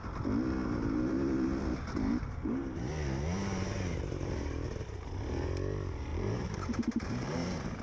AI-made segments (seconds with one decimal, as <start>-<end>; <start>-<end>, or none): 0.6-4.7; 6.1-7.8